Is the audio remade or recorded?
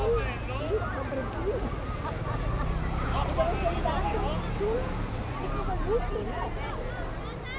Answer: recorded